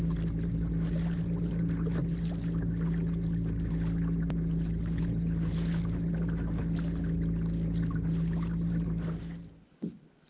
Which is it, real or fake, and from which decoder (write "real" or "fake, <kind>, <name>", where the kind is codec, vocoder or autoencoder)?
real